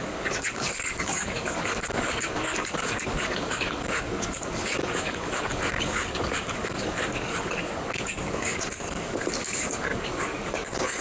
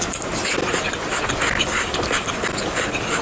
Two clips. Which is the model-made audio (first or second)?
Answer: first